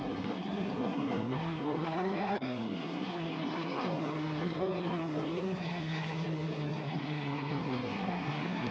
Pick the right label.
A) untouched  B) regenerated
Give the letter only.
B